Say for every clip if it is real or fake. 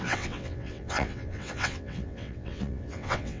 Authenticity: fake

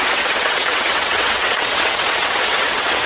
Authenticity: fake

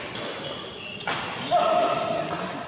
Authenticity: real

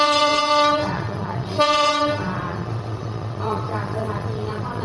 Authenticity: fake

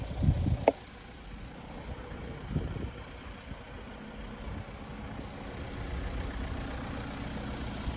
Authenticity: real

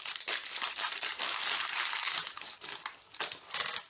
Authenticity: real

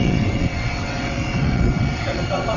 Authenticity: fake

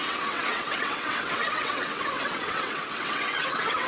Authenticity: fake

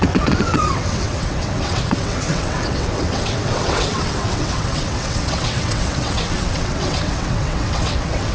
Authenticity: fake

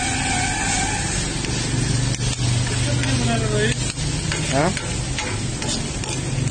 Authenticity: real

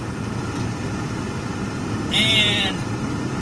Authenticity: real